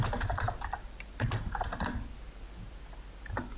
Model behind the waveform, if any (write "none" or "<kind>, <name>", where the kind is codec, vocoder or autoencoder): none